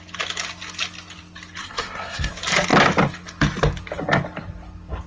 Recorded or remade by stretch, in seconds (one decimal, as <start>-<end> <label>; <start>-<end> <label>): 0.0-1.6 recorded; 1.6-2.3 remade; 2.3-5.1 recorded